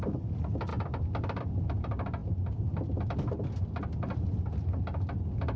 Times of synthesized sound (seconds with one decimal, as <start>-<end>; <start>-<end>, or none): none